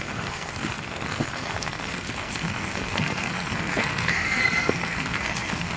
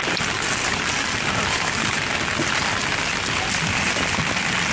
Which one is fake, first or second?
first